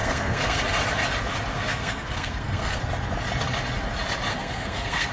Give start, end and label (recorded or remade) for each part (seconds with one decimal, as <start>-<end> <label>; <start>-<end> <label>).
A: 0.0-0.6 remade; 0.6-1.5 recorded; 1.5-2.8 remade; 2.8-4.3 recorded; 4.3-5.1 remade

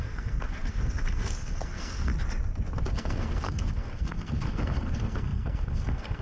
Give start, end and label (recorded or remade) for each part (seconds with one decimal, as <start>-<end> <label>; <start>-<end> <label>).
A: 0.0-2.1 remade; 2.1-2.9 recorded; 2.9-6.2 remade

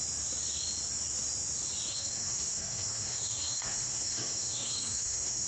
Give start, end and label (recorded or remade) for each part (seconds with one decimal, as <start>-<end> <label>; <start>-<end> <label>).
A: 0.0-1.9 recorded; 1.9-5.5 remade

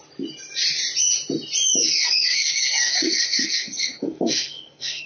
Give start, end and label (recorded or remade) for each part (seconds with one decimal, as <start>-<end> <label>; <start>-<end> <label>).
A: 0.0-1.8 recorded; 1.8-5.1 remade

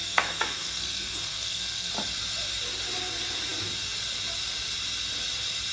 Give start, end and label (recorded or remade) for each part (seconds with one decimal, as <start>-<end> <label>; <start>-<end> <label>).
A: 0.0-1.9 remade; 1.9-5.7 recorded